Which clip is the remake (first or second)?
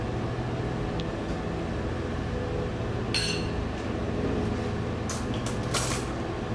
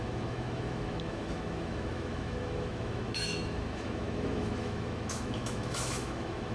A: second